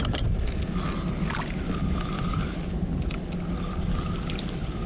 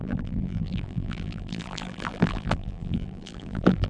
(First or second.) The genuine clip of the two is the first